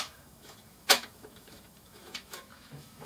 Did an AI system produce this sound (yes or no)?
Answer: yes